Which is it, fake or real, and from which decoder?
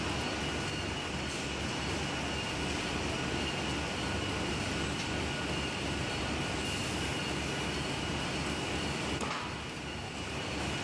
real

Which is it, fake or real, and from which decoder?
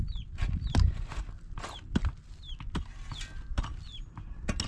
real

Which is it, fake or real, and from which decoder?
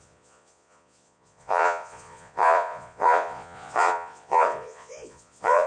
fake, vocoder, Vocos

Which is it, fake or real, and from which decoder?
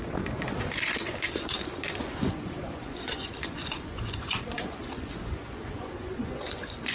fake, vocoder, Vocos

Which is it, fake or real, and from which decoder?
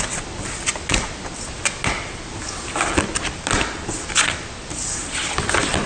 real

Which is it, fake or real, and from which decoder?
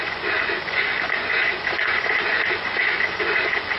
fake, vocoder, Vocos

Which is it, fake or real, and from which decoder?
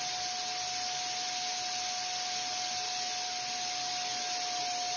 real